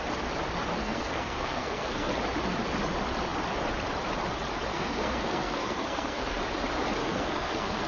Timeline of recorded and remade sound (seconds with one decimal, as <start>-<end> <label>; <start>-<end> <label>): 0.0-0.8 recorded; 0.8-2.1 remade; 2.1-4.7 recorded; 4.7-6.4 remade; 6.4-7.0 recorded; 7.0-7.9 remade